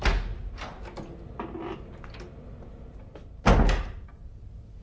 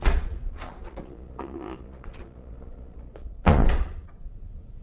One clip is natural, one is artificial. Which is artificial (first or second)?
second